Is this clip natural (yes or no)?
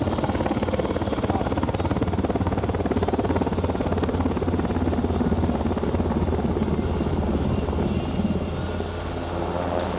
yes